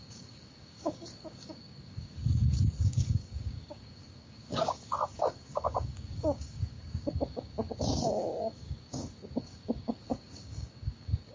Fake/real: fake